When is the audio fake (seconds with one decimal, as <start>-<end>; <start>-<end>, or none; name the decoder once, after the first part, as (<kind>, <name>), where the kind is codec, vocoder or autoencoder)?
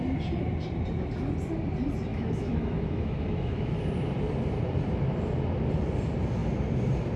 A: 2.1-3.8 (autoencoder, DAC-VAE)